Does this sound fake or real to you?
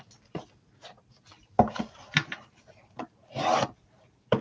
real